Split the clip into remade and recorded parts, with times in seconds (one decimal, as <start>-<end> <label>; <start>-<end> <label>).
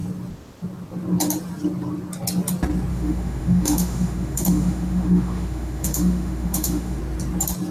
0.0-2.9 recorded; 2.9-7.0 remade; 7.0-7.7 recorded